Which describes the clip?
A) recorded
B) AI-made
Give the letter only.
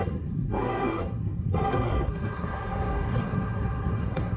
B